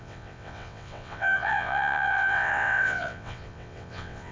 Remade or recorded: remade